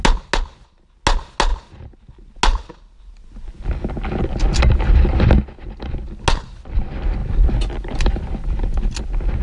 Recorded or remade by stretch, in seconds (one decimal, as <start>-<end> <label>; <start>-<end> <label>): 0.0-7.2 recorded; 7.2-9.0 remade; 9.0-9.4 recorded